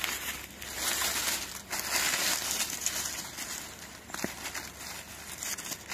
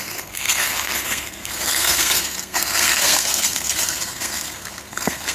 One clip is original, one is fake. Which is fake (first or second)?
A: second